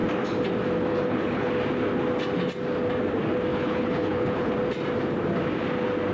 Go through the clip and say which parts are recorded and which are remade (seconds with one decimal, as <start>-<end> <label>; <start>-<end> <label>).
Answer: 0.0-0.9 recorded; 0.9-1.5 remade; 1.5-3.5 recorded; 3.5-4.5 remade; 4.5-6.1 recorded